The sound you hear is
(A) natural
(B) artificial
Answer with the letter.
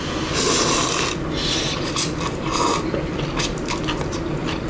A